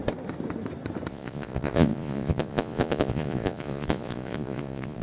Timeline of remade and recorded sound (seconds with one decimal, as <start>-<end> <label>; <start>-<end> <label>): 0.0-1.1 recorded; 1.1-5.0 remade